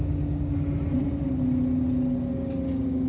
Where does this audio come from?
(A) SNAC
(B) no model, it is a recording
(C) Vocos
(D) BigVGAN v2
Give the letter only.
B